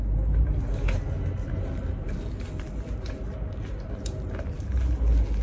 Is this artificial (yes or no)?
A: no